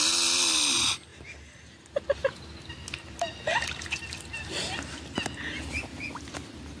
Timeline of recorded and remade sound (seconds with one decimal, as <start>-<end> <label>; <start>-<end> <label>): 0.0-5.9 recorded; 5.9-6.8 remade